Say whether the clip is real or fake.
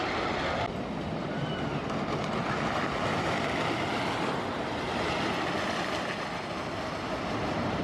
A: real